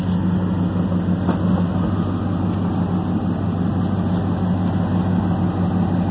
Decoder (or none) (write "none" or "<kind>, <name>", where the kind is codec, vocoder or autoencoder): none